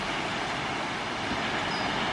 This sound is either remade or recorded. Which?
recorded